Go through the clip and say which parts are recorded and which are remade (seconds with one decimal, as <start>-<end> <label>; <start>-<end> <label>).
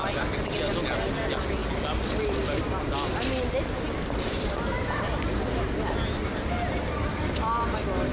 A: 0.0-8.1 recorded